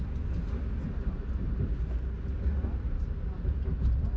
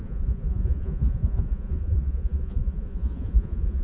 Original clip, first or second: first